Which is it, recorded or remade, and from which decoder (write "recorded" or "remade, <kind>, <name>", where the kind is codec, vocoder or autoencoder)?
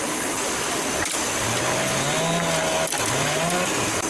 recorded